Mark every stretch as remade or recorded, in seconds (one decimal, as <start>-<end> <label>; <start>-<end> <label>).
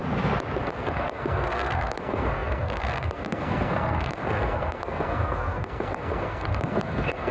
0.0-0.6 recorded; 0.6-7.3 remade